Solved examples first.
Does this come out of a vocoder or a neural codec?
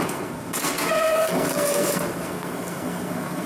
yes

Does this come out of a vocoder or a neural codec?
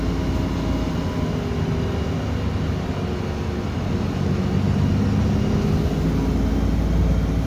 no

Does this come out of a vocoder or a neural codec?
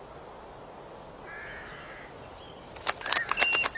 no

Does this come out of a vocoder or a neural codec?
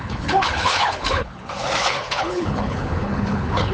yes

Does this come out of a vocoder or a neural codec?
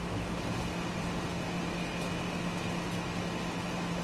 no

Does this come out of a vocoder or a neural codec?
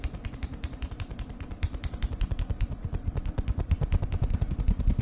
yes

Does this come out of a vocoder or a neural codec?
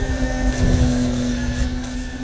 yes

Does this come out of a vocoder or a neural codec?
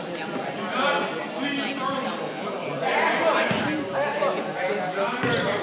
no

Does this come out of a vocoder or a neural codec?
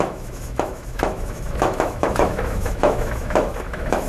yes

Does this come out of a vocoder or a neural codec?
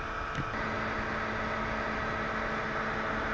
no